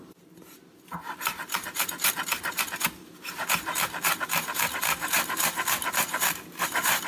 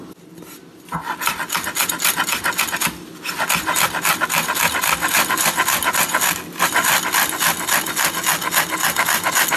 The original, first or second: second